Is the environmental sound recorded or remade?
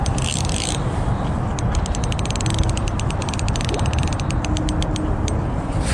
recorded